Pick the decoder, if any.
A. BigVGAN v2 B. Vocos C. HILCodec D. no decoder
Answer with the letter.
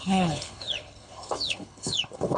C